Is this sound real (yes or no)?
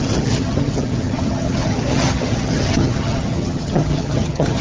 no